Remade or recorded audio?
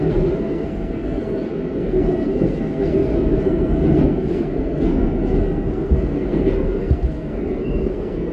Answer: remade